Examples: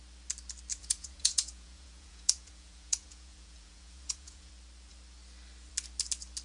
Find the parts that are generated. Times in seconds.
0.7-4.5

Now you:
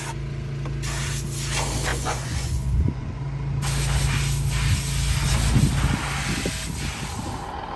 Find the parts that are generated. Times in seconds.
1.9-3.2

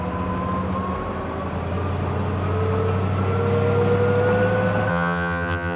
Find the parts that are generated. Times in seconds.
4.9-5.8

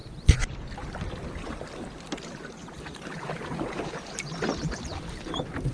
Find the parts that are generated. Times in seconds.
none

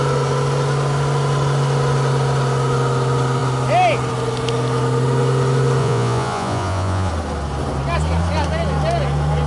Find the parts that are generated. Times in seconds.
5.8-7.1

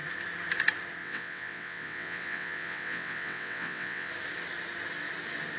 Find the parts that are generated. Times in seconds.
1.0-4.1

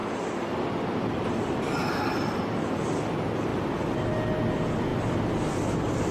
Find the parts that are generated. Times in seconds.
0.0-1.2; 1.8-2.5; 4.9-6.1

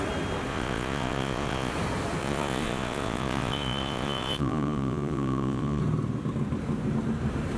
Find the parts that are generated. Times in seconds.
0.5-1.7; 2.2-5.8